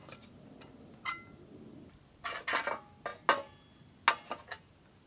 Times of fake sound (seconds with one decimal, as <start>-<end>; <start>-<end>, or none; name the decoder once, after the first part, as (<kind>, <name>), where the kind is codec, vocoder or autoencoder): none